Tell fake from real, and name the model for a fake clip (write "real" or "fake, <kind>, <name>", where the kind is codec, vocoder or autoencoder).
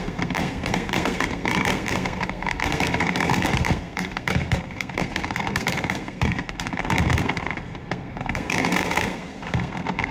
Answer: fake, codec, SNAC